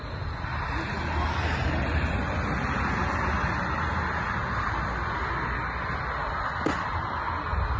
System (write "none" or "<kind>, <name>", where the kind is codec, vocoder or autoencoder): none